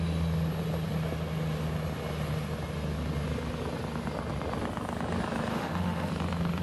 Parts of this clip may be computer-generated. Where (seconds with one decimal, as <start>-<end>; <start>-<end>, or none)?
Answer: 5.5-6.1